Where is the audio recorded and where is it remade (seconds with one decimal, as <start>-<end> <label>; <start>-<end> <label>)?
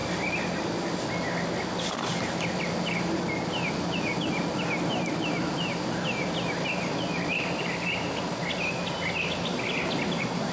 0.0-10.5 recorded